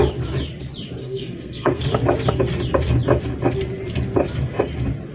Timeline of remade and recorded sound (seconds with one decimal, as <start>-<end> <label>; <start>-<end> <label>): 0.0-1.0 recorded; 1.0-1.8 remade; 1.8-5.1 recorded